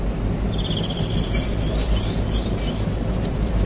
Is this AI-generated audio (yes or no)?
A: no